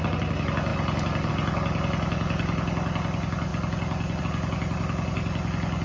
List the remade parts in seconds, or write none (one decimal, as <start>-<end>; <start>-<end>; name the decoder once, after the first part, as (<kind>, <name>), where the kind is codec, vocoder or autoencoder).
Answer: none